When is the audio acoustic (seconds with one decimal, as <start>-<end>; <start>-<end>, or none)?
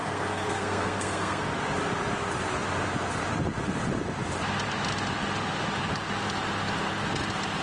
1.5-7.6